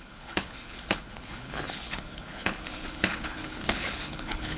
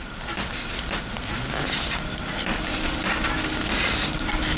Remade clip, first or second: first